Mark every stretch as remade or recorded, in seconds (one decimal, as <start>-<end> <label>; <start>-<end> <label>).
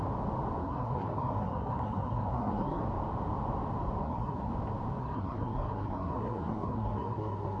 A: 0.0-0.6 recorded; 0.6-2.8 remade; 2.8-4.0 recorded; 4.0-4.5 remade; 4.5-5.0 recorded; 5.0-7.6 remade